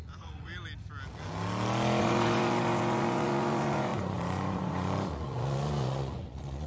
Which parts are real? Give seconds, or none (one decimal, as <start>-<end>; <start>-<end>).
0.5-2.0